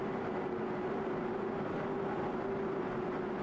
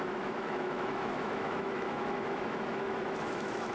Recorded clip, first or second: first